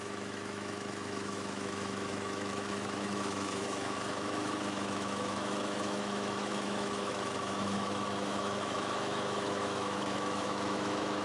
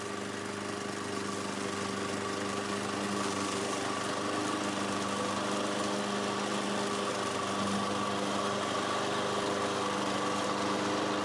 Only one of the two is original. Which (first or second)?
second